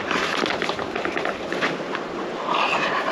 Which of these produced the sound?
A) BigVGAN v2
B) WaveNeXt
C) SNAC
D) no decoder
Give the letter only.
D